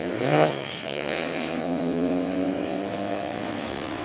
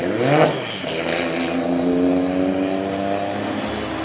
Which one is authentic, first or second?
second